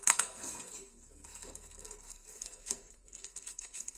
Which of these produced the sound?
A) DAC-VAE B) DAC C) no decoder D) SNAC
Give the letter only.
D